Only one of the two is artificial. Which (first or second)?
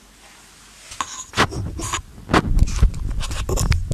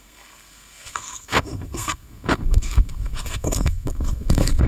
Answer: second